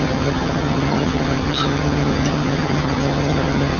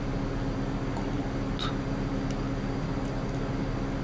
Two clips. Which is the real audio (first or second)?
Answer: second